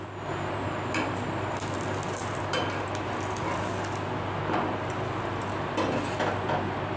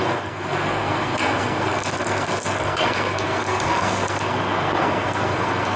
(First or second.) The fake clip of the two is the second